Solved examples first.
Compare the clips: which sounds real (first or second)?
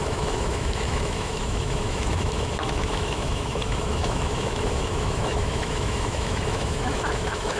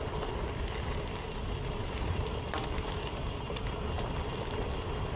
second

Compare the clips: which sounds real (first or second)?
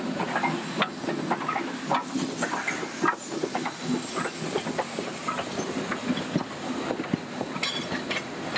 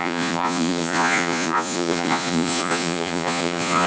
first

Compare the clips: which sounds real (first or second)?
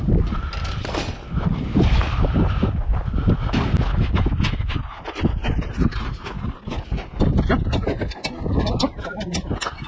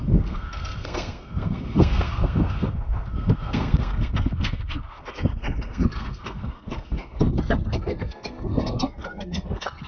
first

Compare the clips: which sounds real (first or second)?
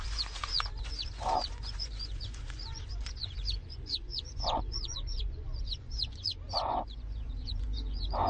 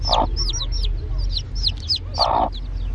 second